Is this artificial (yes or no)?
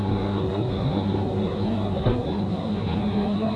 yes